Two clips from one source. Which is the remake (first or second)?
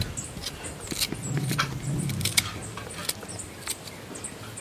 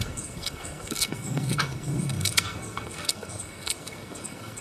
second